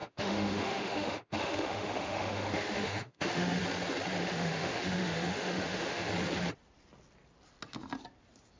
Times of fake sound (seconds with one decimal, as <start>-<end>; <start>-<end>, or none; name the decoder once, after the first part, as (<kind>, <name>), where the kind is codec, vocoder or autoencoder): 0.0-3.6 (autoencoder, DAC-VAE); 4.2-6.1